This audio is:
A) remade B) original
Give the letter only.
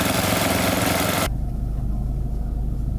B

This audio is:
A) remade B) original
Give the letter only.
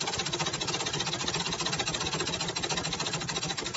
B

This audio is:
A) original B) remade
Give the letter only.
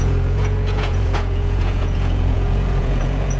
B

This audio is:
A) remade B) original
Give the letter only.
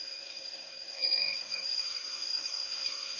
A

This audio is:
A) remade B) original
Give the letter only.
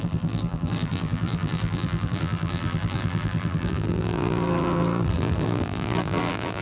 A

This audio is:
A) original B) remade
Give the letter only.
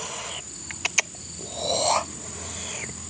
A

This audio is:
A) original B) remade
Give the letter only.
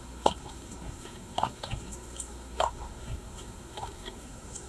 B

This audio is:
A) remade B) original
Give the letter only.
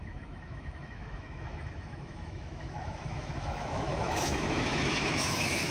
A